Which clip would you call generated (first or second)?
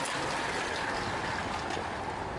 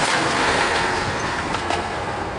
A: second